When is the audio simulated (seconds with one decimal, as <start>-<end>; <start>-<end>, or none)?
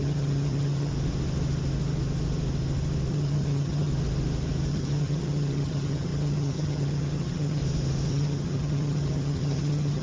0.0-0.9; 3.1-3.9; 4.7-7.6; 8.1-10.0